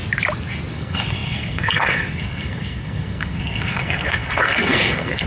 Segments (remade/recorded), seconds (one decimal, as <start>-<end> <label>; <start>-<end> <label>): 0.0-0.7 recorded; 0.7-5.3 remade